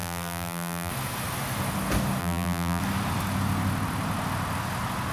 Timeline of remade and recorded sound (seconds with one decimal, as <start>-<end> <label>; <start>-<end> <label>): 0.0-0.9 remade; 0.9-2.2 recorded; 2.2-2.8 remade; 2.8-5.1 recorded